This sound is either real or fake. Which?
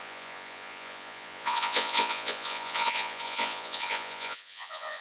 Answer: fake